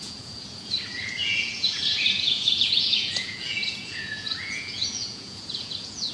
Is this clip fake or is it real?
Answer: fake